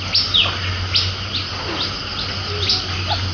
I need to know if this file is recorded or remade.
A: recorded